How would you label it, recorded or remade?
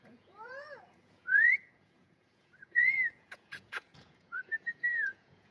remade